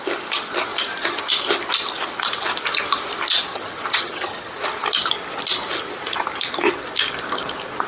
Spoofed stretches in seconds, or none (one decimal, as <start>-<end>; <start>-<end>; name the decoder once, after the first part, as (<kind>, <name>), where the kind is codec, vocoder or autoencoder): 3.5-4.5 (vocoder, HiFi-GAN)